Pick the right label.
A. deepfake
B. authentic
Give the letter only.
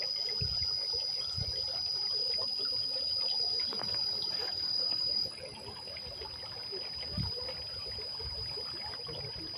B